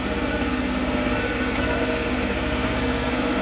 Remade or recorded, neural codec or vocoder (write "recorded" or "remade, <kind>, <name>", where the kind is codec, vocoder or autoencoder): remade, codec, SNAC